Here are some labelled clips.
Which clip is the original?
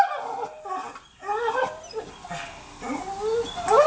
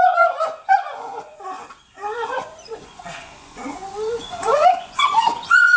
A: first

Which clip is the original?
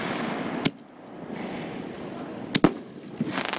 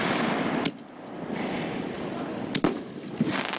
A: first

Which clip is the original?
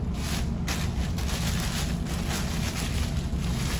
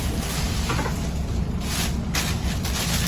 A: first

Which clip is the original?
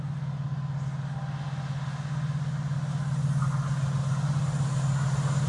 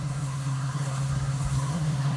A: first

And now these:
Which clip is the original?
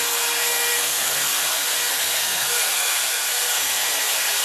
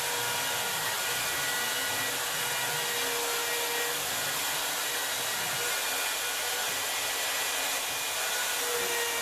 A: second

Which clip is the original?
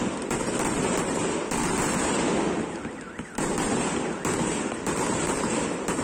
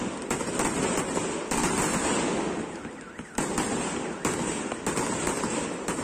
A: second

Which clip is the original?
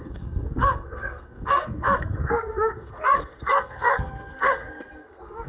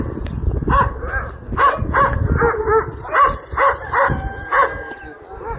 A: second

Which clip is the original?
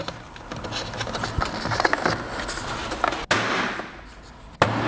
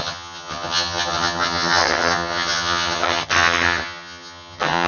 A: first